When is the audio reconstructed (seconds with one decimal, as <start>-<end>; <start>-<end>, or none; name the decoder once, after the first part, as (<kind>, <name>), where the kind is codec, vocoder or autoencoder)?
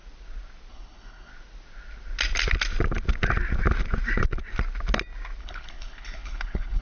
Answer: 0.7-1.3 (codec, HILCodec); 5.4-6.8